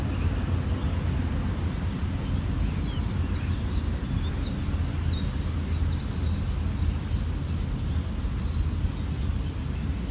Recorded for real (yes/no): yes